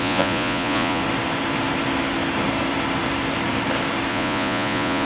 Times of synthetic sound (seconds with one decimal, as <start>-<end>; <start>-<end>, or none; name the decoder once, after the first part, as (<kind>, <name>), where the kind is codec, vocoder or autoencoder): 0.0-1.0 (vocoder, Vocos); 4.1-5.1